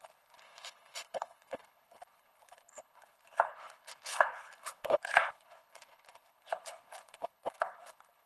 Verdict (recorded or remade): remade